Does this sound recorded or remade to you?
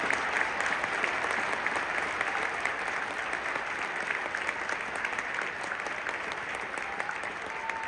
remade